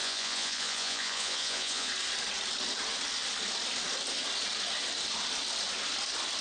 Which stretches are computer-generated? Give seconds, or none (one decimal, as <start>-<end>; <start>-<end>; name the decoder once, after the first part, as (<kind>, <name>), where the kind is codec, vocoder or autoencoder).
0.0-1.9 (vocoder, Vocos)